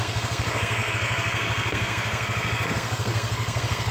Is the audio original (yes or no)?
no